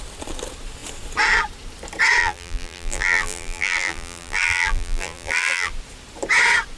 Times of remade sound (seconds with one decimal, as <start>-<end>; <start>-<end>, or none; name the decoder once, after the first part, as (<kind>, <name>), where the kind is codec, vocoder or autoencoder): 2.2-5.7 (vocoder, BigVGAN v2)